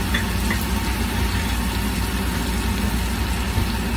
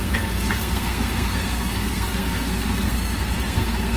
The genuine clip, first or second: first